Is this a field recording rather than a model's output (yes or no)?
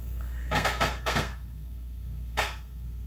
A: no